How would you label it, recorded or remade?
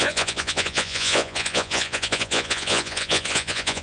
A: remade